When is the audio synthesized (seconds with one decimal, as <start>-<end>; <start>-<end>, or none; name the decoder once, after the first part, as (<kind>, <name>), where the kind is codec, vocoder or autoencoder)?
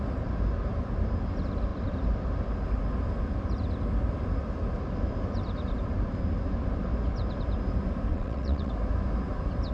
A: 8.1-8.7 (vocoder, WaveNeXt)